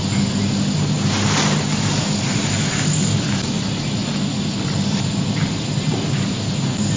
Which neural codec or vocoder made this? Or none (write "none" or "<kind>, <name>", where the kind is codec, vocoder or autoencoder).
none